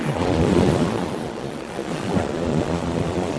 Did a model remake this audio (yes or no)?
yes